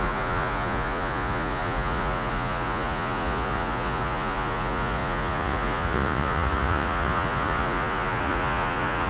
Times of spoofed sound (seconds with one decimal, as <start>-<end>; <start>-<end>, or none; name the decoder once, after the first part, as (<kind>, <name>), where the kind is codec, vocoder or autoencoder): 0.0-9.1 (vocoder, Vocos)